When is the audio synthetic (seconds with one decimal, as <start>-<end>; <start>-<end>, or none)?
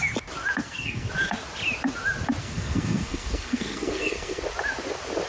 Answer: 0.6-1.1; 2.4-4.4